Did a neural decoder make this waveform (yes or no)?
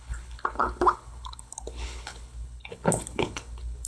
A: yes